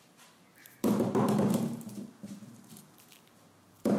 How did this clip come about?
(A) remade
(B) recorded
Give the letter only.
A